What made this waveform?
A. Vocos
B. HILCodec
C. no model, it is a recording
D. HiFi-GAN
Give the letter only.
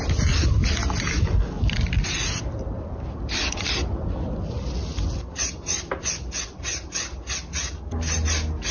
C